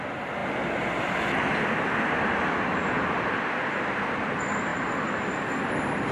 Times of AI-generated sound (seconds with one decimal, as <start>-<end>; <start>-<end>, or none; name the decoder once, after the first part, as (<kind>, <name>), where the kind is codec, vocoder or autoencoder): 0.0-0.4 (vocoder, BigVGAN v2); 4.1-4.7